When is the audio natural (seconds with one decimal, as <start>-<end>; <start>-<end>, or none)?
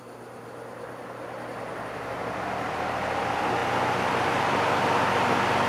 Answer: 0.0-1.5; 2.2-3.6; 5.3-5.7